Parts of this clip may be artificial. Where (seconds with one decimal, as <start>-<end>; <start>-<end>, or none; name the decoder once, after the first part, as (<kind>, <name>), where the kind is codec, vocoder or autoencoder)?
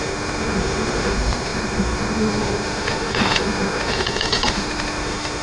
0.0-5.4 (autoencoder, DAC-VAE)